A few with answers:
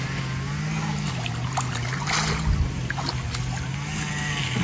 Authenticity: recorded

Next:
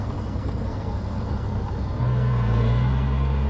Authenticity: remade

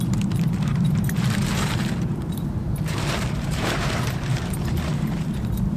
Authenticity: remade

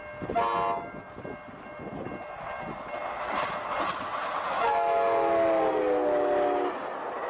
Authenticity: recorded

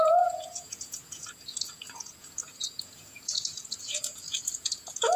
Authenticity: remade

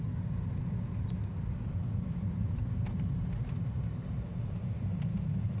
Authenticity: remade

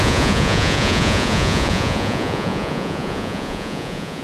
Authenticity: remade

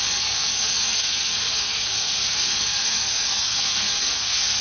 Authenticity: remade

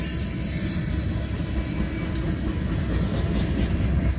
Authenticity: recorded